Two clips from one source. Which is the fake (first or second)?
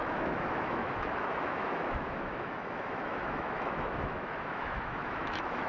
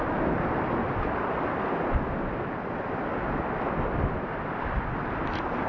first